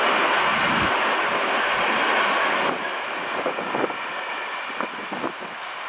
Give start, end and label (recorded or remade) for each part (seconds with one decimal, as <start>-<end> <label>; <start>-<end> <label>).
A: 0.0-5.9 recorded